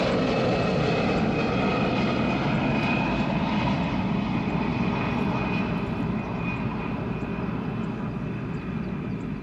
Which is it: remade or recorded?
recorded